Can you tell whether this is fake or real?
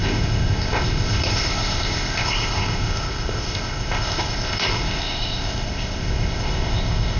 fake